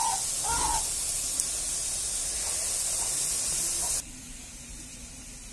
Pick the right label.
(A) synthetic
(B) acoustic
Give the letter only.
B